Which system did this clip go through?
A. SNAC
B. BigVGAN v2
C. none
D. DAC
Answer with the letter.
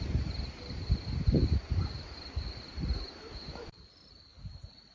B